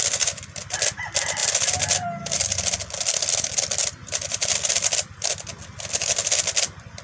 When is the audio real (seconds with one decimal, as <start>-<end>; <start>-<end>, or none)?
0.0-7.0